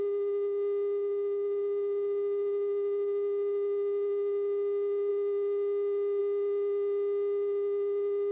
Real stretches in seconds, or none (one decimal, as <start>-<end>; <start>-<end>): 0.0-8.3